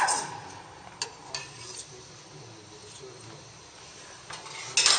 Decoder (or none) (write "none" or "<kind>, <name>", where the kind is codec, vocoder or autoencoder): none